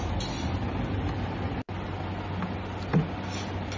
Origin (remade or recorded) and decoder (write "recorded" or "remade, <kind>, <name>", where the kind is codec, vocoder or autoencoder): recorded